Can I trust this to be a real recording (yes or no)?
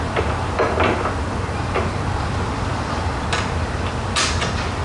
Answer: yes